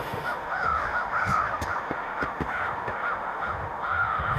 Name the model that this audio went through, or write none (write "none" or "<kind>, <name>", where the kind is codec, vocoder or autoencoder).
autoencoder, DAC-VAE